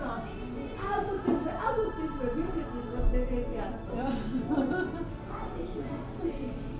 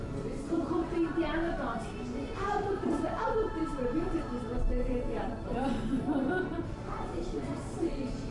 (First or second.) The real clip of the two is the first